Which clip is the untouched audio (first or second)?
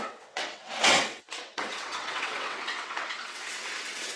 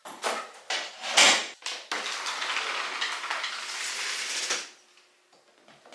second